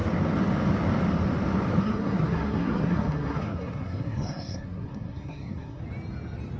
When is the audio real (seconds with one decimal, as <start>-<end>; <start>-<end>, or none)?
0.0-1.8; 5.8-6.6